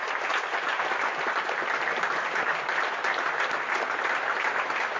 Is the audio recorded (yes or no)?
yes